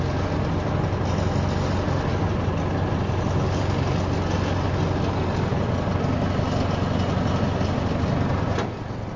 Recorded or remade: recorded